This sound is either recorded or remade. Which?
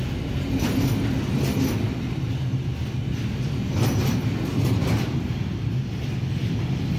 recorded